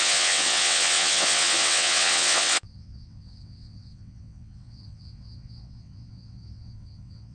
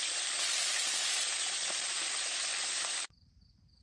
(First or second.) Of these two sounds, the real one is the second